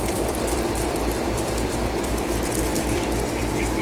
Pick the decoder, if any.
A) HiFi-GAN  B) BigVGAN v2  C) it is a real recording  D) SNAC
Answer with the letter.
B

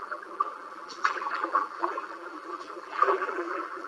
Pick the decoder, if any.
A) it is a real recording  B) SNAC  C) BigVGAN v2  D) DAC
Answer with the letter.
C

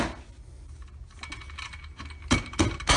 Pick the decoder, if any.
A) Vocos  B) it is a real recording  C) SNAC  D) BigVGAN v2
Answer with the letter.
B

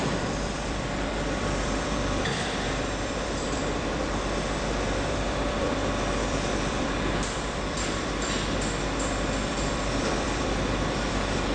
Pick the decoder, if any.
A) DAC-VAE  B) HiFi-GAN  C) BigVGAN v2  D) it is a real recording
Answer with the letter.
C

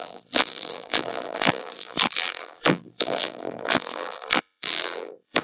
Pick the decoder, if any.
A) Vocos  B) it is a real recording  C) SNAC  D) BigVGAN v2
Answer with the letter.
D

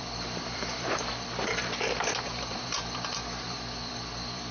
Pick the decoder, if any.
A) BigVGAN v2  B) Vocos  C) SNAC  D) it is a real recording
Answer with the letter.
A